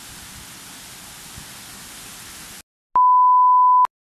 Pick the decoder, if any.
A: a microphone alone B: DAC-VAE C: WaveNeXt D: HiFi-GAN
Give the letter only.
A